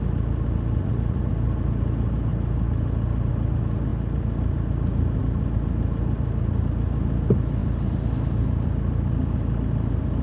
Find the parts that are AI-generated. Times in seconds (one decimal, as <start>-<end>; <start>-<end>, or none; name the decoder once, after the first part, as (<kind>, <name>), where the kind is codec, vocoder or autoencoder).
0.8-1.3 (vocoder, Vocos)